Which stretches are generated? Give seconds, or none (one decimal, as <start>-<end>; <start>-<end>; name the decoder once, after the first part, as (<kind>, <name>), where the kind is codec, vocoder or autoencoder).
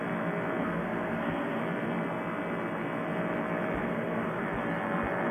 0.6-1.6 (codec, SNAC); 3.8-4.4